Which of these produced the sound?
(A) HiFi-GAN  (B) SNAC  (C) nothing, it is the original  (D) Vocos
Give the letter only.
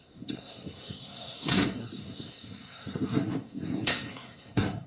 B